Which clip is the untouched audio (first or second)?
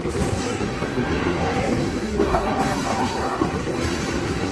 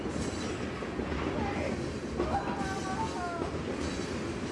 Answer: second